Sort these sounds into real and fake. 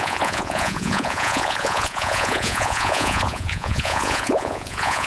fake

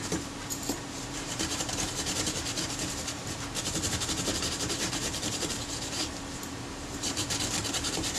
fake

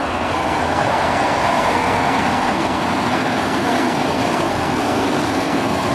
fake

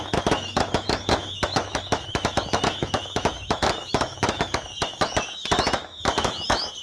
fake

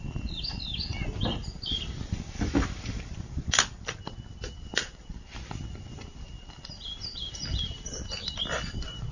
fake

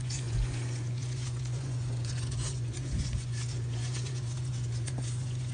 fake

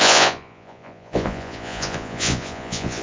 fake